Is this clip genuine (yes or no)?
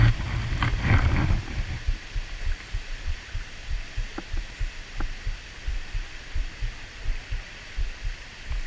yes